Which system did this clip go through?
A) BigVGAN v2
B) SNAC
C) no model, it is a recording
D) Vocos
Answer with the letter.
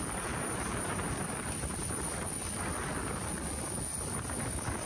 C